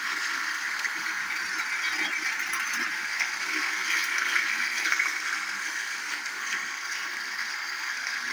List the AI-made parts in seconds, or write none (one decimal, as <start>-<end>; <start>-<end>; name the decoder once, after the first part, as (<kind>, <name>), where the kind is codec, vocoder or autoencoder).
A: 0.0-1.2 (codec, SNAC); 2.9-8.3